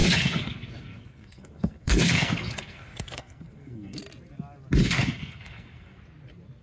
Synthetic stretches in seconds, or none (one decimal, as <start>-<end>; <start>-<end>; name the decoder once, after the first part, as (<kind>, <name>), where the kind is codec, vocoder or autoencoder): 0.0-4.0 (codec, SNAC); 4.8-6.0